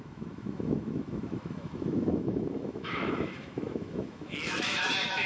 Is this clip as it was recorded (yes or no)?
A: no